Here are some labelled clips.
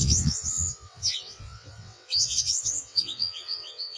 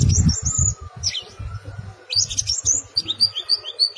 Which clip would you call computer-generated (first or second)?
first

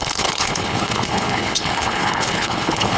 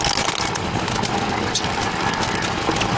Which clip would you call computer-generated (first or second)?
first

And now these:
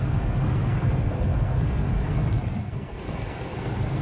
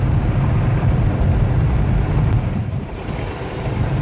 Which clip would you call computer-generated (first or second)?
first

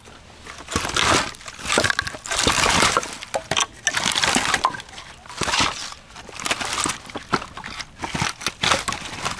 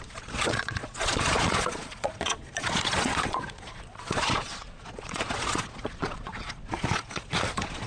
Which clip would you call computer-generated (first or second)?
second